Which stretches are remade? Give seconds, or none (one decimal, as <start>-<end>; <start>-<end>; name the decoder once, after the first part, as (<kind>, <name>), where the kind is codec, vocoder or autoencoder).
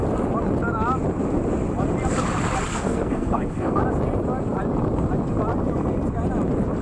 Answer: 2.7-3.8 (codec, SNAC)